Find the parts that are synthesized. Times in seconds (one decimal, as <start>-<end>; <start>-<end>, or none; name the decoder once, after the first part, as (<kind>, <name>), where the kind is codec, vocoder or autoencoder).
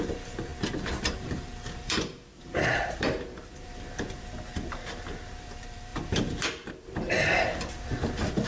0.0-8.5 (vocoder, BigVGAN v2)